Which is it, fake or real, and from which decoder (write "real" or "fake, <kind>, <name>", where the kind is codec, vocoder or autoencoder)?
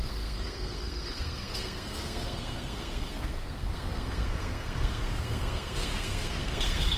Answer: fake, codec, SNAC